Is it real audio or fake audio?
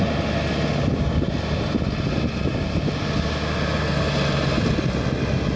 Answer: real